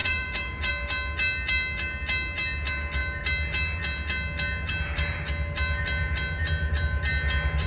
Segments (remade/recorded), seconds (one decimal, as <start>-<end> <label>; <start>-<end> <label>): 0.0-0.7 remade; 0.7-7.7 recorded